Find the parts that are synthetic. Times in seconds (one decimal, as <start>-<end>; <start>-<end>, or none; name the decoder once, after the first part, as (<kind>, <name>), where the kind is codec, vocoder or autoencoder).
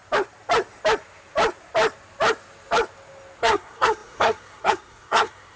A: 3.4-5.6 (codec, SNAC)